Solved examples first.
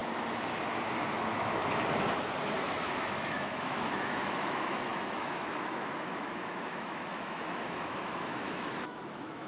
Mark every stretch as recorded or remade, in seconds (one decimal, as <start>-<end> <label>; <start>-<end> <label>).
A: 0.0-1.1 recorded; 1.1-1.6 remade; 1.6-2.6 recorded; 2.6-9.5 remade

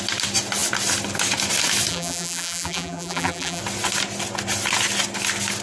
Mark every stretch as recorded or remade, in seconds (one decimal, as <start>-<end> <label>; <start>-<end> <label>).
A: 0.0-1.9 recorded; 1.9-3.6 remade; 3.6-5.6 recorded

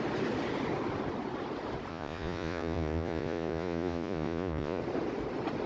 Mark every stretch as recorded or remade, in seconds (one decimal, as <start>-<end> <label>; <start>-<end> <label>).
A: 0.0-1.9 recorded; 1.9-4.8 remade; 4.8-5.7 recorded

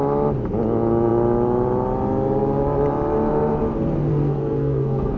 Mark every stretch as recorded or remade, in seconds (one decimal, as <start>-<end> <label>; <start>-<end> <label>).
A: 0.0-4.1 recorded; 4.1-5.2 remade

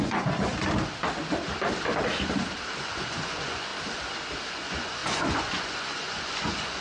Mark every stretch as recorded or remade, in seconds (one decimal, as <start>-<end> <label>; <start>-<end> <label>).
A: 0.0-0.5 remade; 0.5-2.8 recorded; 2.8-3.7 remade; 3.7-4.5 recorded; 4.5-6.8 remade

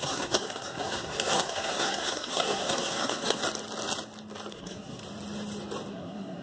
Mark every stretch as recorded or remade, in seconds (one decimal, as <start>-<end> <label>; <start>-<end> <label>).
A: 0.0-3.4 remade; 3.4-4.5 recorded; 4.5-5.0 remade; 5.0-5.9 recorded; 5.9-6.4 remade